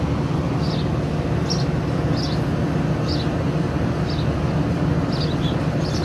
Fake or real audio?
real